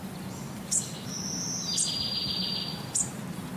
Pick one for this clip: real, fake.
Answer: real